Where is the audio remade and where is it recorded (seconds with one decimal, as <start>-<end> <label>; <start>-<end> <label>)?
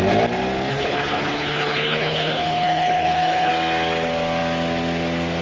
0.0-0.7 recorded; 0.7-3.5 remade; 3.5-5.4 recorded